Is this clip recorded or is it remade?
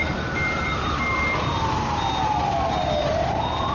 recorded